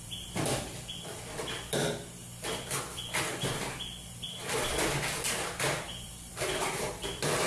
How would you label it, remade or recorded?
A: remade